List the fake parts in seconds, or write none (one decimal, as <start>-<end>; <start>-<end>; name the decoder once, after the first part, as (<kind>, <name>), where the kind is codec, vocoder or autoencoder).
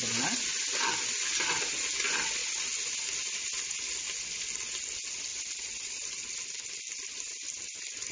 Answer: 2.4-3.6 (vocoder, BigVGAN v2); 5.3-8.1